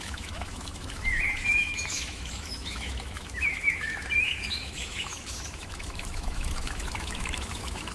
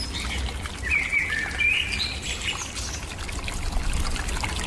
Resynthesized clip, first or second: first